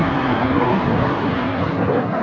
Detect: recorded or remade remade